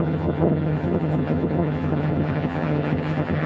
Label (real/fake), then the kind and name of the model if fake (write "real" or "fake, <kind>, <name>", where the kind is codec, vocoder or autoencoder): fake, vocoder, HiFi-GAN